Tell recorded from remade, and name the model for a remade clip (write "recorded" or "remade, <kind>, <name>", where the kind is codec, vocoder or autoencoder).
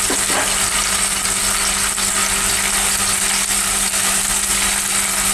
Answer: recorded